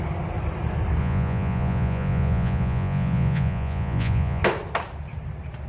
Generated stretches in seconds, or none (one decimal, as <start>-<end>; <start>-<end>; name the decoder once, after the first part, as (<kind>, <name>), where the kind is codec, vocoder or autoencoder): 1.0-4.4 (vocoder, Vocos)

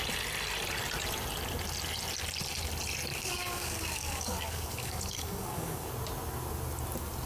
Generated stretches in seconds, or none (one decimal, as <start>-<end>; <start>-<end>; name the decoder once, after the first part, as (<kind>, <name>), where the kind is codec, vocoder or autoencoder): 3.1-5.9 (codec, DAC)